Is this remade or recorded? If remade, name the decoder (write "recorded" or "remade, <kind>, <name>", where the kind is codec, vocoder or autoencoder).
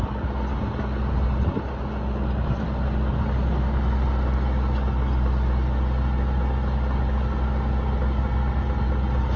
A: recorded